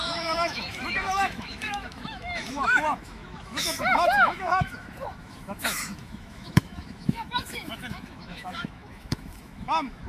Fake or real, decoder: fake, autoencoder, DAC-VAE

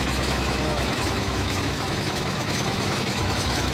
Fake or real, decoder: fake, autoencoder, DAC-VAE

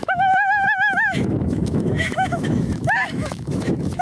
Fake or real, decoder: fake, autoencoder, DAC-VAE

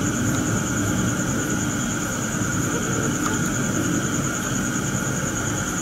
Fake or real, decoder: real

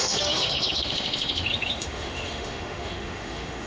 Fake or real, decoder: fake, autoencoder, DAC-VAE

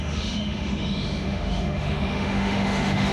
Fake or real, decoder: fake, autoencoder, DAC-VAE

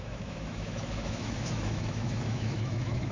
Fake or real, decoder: fake, autoencoder, DAC-VAE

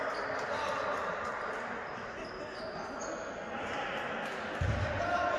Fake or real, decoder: real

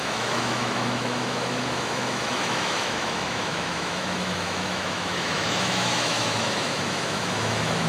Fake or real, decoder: fake, autoencoder, DAC-VAE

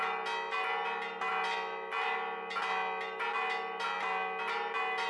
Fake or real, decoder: real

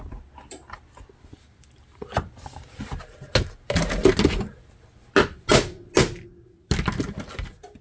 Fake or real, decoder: real